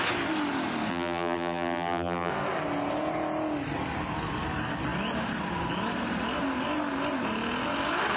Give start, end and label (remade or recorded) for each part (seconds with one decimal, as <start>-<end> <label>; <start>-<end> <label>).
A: 0.0-0.9 recorded; 0.9-2.3 remade; 2.3-8.2 recorded